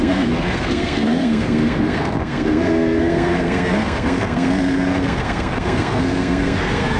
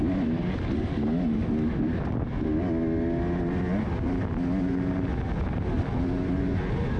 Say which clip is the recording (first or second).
second